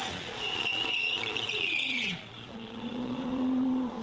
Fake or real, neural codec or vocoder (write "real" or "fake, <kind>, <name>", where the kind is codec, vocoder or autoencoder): fake, vocoder, Vocos